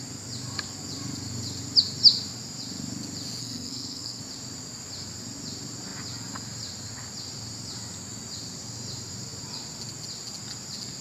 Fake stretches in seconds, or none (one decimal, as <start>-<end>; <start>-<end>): 3.4-4.2

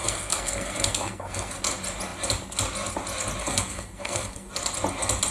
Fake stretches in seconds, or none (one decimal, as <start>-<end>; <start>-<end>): 0.0-1.6; 3.4-4.5

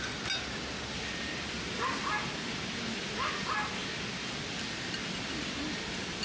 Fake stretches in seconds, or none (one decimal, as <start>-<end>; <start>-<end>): none

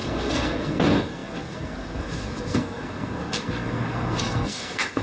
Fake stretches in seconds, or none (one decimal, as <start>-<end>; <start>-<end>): 0.0-5.0

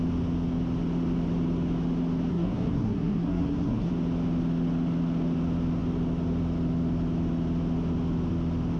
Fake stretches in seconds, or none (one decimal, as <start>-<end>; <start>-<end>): 2.3-3.9